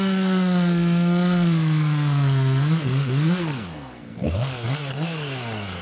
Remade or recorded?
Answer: remade